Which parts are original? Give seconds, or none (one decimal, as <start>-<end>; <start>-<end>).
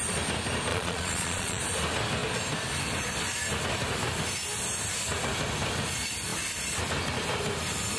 0.0-0.7; 1.6-8.0